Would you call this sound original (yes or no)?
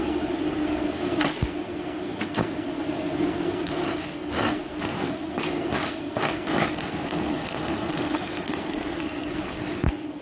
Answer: no